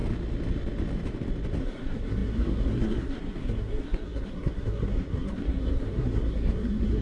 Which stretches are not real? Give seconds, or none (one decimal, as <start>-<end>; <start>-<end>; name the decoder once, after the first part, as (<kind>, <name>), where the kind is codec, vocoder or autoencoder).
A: 1.6-7.0 (codec, SNAC)